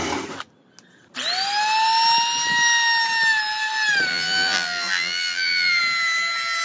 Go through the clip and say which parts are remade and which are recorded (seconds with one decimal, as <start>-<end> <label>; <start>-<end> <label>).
0.0-4.1 recorded; 4.1-5.8 remade; 5.8-6.6 recorded